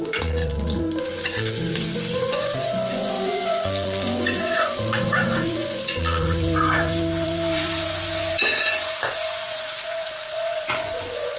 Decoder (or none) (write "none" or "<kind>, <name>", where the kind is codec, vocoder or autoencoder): vocoder, Vocos